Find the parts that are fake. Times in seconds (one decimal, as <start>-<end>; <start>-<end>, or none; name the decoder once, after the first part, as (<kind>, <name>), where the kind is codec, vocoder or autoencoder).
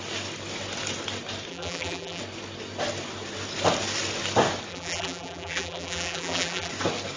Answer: 1.5-2.2 (vocoder, BigVGAN v2); 4.7-6.7